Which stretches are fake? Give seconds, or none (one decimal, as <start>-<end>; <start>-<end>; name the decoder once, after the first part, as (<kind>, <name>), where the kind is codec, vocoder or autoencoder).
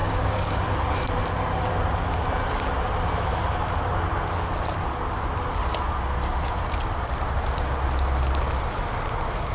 0.0-0.6 (codec, DAC)